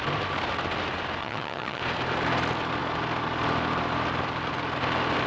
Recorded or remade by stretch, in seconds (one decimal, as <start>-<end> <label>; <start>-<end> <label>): 0.0-1.2 recorded; 1.2-1.8 remade; 1.8-5.3 recorded

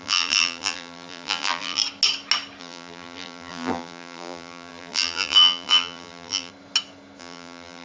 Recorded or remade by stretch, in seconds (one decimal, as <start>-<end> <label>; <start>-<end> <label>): 0.0-1.8 remade; 1.8-2.6 recorded; 2.6-6.5 remade; 6.5-7.2 recorded; 7.2-7.8 remade

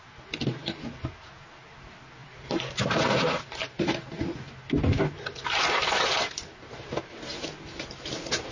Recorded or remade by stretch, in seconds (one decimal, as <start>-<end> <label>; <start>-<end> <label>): 0.0-8.5 recorded

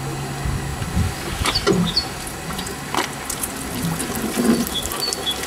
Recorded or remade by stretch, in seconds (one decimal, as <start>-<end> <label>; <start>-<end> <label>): 0.0-5.5 recorded

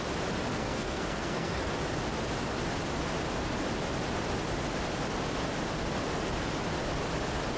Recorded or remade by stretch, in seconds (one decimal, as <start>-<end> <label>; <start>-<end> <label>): 0.0-0.5 recorded; 0.5-1.7 remade; 1.7-7.6 recorded

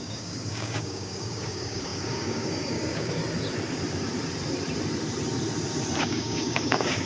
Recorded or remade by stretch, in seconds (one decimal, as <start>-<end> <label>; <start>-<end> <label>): 0.0-3.2 remade; 3.2-6.0 recorded; 6.0-7.1 remade

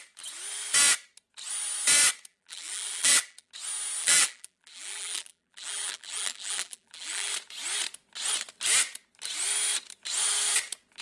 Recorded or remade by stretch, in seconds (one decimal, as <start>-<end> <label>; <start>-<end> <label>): 0.0-2.3 recorded; 2.3-3.5 remade; 3.5-4.0 recorded; 4.0-7.3 remade; 7.3-11.0 recorded